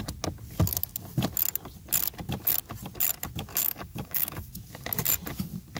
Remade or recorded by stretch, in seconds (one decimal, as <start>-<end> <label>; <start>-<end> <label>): 0.0-3.5 recorded; 3.5-4.5 remade; 4.5-5.8 recorded